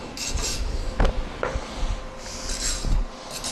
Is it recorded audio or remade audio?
recorded